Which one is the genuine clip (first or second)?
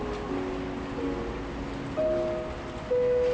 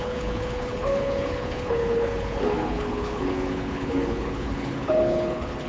first